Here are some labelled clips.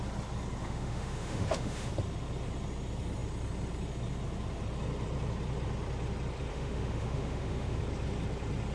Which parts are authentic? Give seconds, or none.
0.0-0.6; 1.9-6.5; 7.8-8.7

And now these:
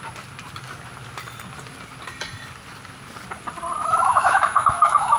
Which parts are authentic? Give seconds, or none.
0.0-3.8

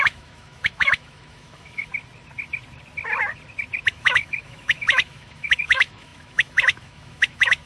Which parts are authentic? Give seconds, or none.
1.9-3.9

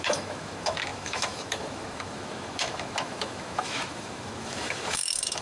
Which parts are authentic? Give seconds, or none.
none

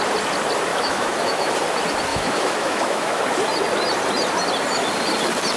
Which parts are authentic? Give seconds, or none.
0.0-0.7; 1.5-2.1; 3.2-5.6

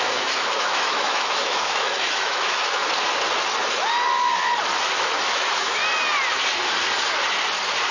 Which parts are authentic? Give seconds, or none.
2.8-5.0; 5.8-7.9

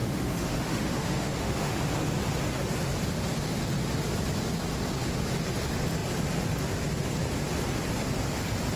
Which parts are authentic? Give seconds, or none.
1.8-8.8